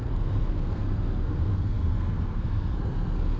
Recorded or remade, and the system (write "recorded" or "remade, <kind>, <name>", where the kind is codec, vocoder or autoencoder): remade, codec, SNAC